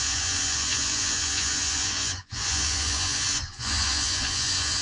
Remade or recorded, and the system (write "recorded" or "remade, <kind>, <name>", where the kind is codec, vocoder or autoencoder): remade, vocoder, Vocos